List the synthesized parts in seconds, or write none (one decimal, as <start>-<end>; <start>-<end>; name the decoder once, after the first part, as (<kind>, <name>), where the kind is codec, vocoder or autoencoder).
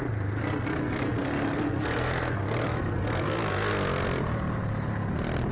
0.4-3.7 (codec, SNAC)